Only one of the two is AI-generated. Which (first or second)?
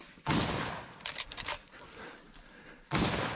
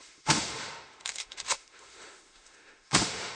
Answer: second